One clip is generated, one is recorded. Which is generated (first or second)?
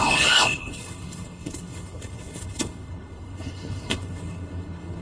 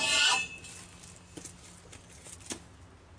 first